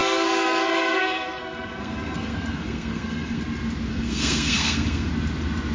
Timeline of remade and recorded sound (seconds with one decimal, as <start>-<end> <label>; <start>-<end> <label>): 0.0-3.4 remade; 3.4-3.9 recorded; 3.9-5.1 remade; 5.1-5.7 recorded